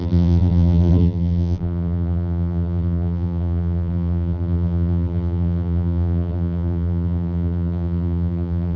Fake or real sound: fake